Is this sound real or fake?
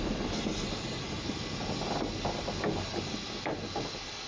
real